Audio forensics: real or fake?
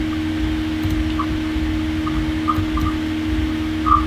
real